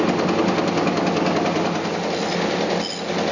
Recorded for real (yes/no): yes